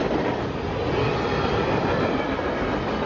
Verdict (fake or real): real